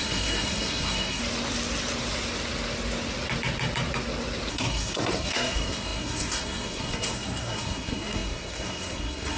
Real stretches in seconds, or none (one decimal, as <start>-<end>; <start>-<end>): 1.2-4.5